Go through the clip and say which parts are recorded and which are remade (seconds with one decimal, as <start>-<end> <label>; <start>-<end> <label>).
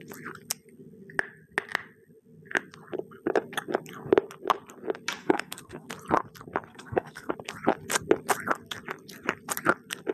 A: 0.0-5.2 recorded; 5.2-5.9 remade; 5.9-6.7 recorded; 6.7-7.3 remade; 7.3-10.1 recorded